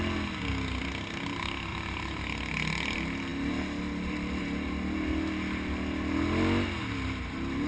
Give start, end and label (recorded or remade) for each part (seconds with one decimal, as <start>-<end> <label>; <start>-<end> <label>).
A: 0.0-1.7 recorded; 1.7-2.2 remade; 2.2-7.7 recorded